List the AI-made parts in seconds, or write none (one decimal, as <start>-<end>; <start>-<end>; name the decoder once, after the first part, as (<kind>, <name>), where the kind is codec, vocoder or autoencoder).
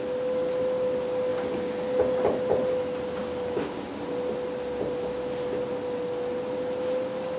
none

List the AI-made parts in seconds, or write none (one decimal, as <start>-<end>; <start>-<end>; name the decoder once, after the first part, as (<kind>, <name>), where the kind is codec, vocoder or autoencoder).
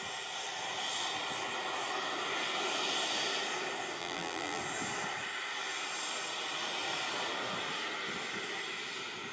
4.0-4.6 (vocoder, BigVGAN v2)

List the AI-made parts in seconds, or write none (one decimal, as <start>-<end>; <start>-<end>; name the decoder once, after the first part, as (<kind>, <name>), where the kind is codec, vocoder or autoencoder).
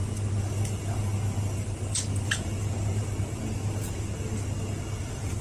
none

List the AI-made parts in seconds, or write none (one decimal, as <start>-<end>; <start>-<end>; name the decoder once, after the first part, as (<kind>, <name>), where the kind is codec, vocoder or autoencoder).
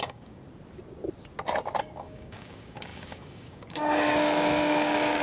0.0-0.4 (codec, DAC); 1.8-5.2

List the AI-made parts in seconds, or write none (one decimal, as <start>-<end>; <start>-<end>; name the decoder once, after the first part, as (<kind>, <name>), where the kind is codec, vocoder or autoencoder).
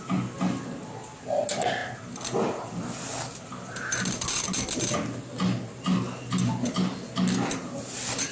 none